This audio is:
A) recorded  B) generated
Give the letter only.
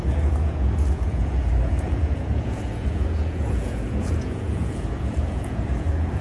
B